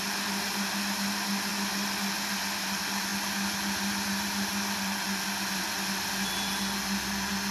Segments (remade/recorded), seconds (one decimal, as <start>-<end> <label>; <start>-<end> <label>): 0.0-7.5 recorded